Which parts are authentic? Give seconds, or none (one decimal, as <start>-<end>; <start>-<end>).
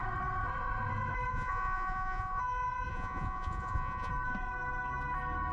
0.0-1.3; 2.4-2.9; 4.1-5.5